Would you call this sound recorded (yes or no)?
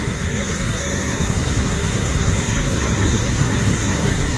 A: no